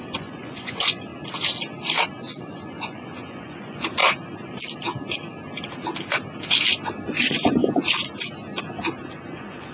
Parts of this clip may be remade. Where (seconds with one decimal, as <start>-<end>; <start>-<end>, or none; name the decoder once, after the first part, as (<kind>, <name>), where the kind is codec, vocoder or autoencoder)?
0.0-1.1 (vocoder, Vocos); 2.4-4.0; 7.1-7.6; 9.1-9.7